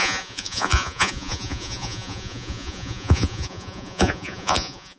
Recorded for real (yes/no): no